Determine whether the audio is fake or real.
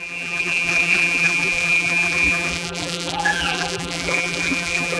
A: fake